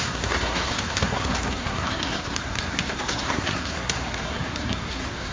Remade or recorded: remade